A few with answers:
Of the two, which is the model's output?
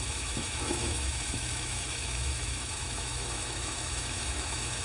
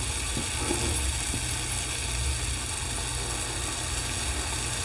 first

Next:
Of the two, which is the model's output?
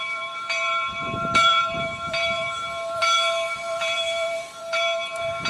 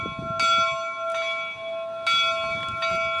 first